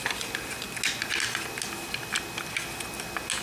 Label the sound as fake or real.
real